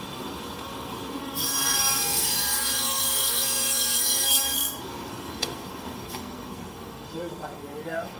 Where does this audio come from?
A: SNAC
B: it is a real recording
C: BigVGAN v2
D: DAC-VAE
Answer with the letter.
A